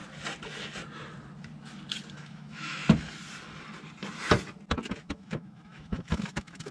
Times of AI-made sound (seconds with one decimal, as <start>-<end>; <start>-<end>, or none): 2.1-2.8; 5.0-6.7